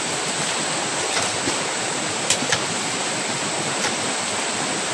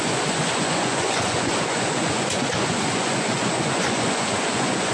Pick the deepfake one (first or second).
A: second